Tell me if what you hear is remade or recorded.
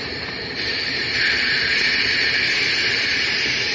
remade